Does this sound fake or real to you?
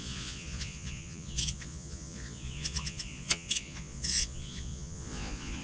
fake